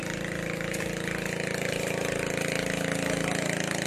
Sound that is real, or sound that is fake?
real